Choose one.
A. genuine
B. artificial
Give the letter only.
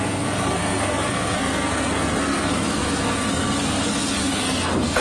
B